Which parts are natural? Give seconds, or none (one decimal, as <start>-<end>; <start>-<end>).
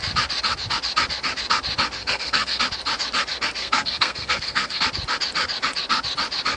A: 0.0-2.0; 2.6-3.6; 4.8-6.6